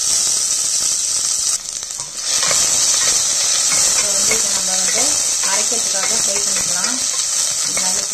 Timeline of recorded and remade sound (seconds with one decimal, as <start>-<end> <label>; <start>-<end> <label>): 0.0-3.0 recorded; 3.0-4.1 remade; 4.1-8.1 recorded